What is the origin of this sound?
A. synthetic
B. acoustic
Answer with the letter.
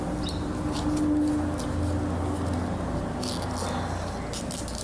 B